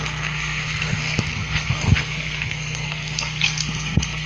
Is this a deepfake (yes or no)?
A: yes